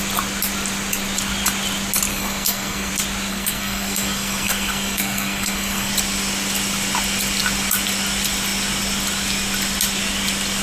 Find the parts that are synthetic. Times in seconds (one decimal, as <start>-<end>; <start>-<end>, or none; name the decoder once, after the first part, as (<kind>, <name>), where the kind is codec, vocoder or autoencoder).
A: 2.1-2.9 (codec, SNAC); 3.3-5.9